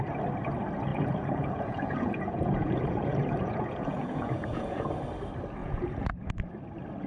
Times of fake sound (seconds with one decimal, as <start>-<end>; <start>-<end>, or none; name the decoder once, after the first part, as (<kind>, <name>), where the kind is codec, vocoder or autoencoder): 0.9-4.9 (vocoder, Vocos); 5.6-6.3